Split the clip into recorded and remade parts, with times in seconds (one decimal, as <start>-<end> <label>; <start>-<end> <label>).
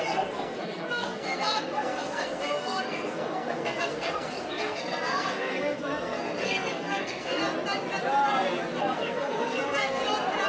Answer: 0.0-7.4 remade; 7.4-8.8 recorded; 8.8-10.0 remade; 10.0-10.5 recorded